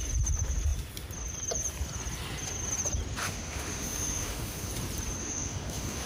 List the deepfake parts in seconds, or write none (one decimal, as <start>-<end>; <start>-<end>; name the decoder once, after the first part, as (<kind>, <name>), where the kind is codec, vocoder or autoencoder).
3.2-4.7 (autoencoder, DAC-VAE); 5.2-6.1